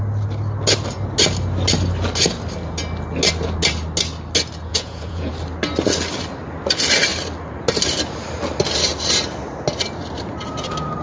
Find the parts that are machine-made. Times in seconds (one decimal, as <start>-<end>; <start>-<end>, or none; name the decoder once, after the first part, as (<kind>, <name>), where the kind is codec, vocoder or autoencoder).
4.7-5.3 (vocoder, Vocos)